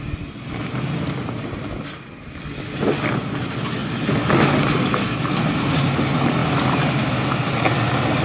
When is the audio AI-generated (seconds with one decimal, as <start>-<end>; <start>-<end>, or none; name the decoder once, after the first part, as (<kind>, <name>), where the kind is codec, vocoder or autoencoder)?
none